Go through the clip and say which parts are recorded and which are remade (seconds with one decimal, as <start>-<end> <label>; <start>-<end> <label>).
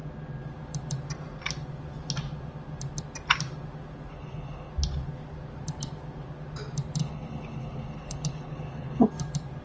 0.0-4.1 recorded; 4.1-4.7 remade; 4.7-7.0 recorded; 7.0-9.0 remade; 9.0-9.6 recorded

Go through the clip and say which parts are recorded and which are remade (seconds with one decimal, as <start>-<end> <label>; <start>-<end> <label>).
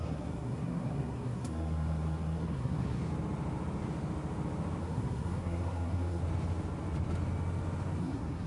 0.0-3.0 remade; 3.0-4.8 recorded; 4.8-6.2 remade; 6.2-8.0 recorded; 8.0-8.5 remade